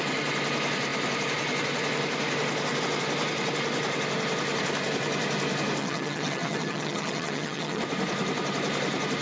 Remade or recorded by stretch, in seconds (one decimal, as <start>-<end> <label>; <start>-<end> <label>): 0.0-5.8 recorded; 5.8-7.8 remade; 7.8-9.2 recorded